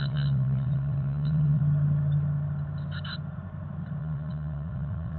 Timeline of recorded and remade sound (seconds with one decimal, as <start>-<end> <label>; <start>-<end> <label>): 0.0-1.6 remade; 1.6-4.0 recorded; 4.0-5.2 remade